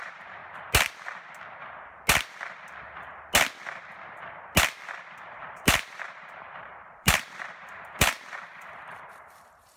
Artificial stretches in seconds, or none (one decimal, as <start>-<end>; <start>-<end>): 0.0-0.4; 5.3-9.8